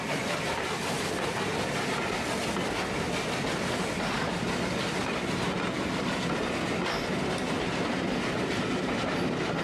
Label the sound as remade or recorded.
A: recorded